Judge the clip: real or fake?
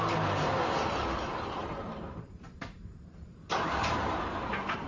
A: fake